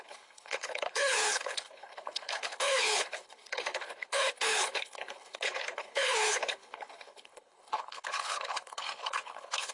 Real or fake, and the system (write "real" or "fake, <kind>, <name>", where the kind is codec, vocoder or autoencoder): fake, codec, HILCodec